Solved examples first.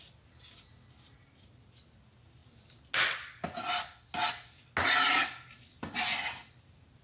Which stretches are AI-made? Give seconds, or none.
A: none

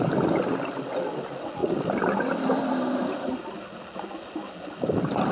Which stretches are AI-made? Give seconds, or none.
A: none

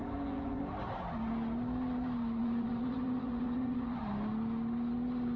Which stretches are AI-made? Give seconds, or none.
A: 0.0-0.6 (vocoder, Vocos); 2.4-4.0

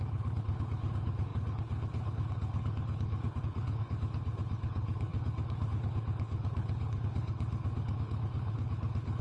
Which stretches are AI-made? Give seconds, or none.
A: 0.0-9.2 (codec, HILCodec)

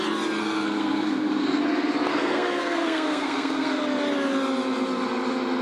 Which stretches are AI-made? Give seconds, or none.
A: 0.4-1.6 (codec, SNAC); 2.1-3.8

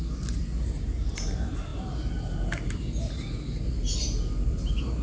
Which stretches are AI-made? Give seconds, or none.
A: none